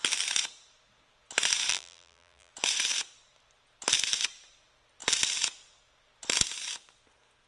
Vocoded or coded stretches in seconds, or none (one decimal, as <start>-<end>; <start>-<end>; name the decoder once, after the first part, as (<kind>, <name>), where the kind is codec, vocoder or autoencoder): 1.7-2.5 (vocoder, BigVGAN v2)